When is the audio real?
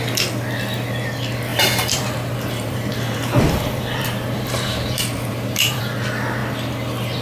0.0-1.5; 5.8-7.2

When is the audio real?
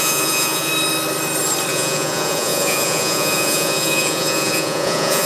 0.7-1.7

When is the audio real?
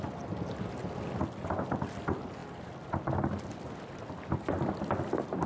0.0-5.5